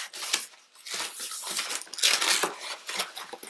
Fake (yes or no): no